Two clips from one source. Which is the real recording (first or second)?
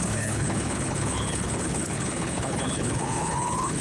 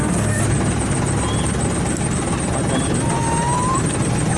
second